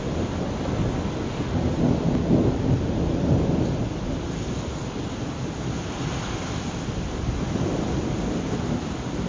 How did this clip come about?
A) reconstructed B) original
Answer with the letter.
B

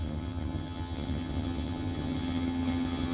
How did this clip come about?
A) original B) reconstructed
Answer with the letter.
B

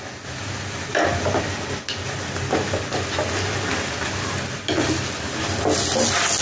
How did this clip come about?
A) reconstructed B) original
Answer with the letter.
B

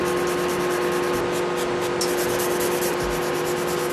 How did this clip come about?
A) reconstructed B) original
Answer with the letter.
B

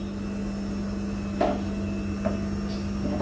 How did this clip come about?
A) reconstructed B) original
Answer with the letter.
B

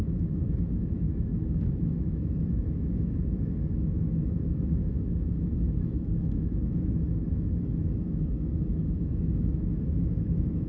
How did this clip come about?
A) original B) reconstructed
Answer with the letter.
B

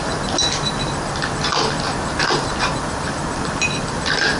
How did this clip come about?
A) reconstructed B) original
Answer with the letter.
B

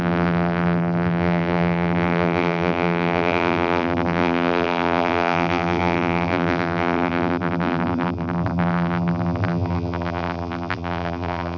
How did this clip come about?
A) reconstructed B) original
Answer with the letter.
A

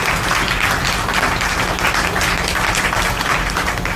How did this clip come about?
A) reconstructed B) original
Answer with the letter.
B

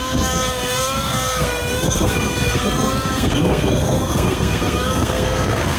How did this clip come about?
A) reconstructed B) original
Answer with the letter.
A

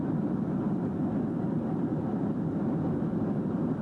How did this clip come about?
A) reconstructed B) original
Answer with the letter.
A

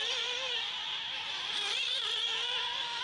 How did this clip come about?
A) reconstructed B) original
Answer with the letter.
A